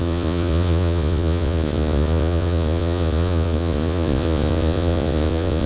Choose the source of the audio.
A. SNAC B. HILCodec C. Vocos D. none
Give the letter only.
C